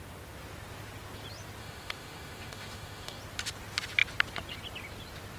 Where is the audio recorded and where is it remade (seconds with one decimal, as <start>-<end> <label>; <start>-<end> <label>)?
0.0-1.6 recorded; 1.6-3.2 remade; 3.2-5.4 recorded